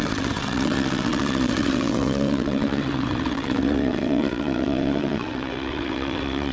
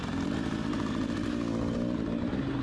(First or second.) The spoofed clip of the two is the first